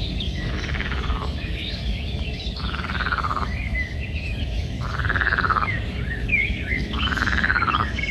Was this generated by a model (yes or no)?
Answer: yes